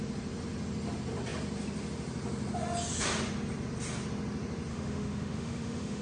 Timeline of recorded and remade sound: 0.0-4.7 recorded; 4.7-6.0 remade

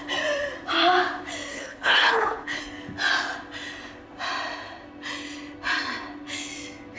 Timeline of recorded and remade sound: 0.0-1.5 recorded; 1.5-2.6 remade; 2.6-7.0 recorded